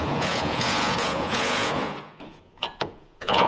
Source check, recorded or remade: remade